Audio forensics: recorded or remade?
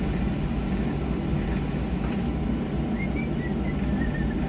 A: recorded